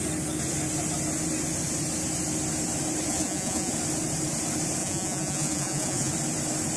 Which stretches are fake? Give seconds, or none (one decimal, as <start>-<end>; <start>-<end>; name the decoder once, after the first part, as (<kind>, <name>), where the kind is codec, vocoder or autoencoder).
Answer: 3.1-3.7 (vocoder, Vocos); 4.8-6.1